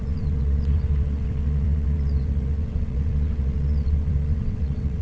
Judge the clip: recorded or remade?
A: remade